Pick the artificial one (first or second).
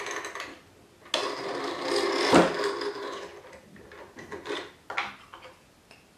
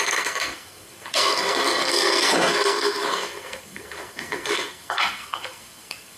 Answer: second